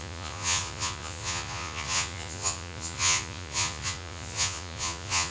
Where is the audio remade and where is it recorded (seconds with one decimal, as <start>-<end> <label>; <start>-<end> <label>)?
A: 0.0-5.3 remade